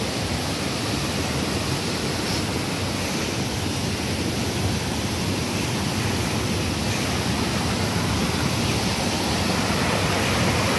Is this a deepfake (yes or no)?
no